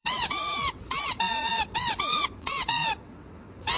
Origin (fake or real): fake